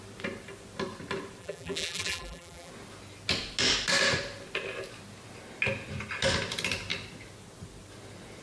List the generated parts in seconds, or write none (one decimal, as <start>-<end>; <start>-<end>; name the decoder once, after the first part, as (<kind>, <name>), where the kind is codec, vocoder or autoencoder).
1.4-2.7 (vocoder, BigVGAN v2)